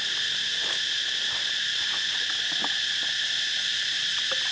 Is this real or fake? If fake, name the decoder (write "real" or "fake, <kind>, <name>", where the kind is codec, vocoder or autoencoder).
real